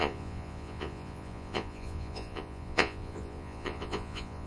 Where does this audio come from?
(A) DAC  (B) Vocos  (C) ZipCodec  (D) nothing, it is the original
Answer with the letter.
B